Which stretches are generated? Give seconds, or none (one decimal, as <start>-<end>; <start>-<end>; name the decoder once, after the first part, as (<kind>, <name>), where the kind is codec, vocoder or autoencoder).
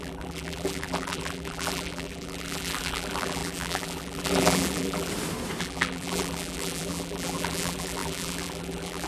0.0-5.1 (vocoder, BigVGAN v2); 5.6-9.1